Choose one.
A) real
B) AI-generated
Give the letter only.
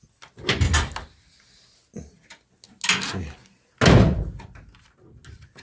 A